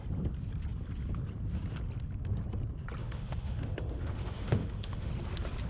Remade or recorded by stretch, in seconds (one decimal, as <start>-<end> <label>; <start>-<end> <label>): 0.0-3.0 recorded; 3.0-5.1 remade; 5.1-5.7 recorded